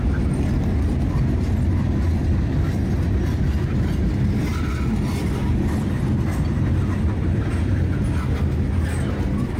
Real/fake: real